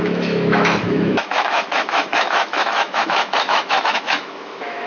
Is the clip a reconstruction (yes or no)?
yes